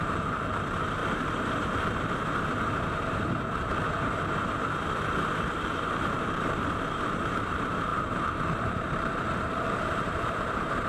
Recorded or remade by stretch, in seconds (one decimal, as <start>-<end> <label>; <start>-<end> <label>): 0.0-1.0 remade; 1.0-5.9 recorded; 5.9-10.9 remade